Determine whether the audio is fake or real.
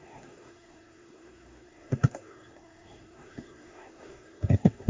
fake